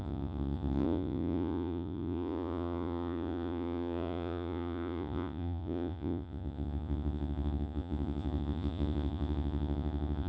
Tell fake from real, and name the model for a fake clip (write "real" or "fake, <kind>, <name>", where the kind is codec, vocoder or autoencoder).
fake, vocoder, Vocos